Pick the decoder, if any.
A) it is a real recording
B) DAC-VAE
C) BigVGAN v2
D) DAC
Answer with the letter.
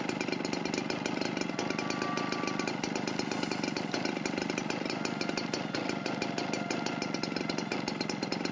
A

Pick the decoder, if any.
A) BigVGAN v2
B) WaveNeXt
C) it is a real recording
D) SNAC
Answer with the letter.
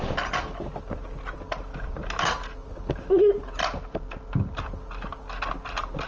C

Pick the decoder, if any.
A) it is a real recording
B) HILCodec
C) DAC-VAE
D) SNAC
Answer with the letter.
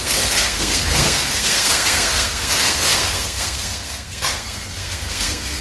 D